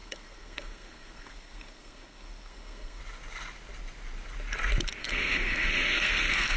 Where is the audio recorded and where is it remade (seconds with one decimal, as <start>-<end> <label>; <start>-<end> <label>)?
0.0-3.0 remade; 3.0-5.0 recorded; 5.0-6.6 remade